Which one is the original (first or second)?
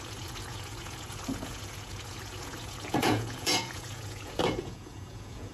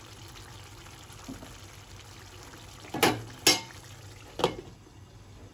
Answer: second